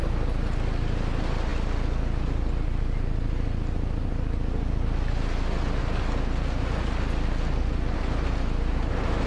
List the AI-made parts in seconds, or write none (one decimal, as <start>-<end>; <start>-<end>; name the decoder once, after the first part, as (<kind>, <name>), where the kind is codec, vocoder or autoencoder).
none